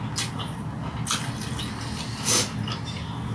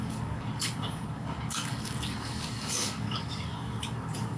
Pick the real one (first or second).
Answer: first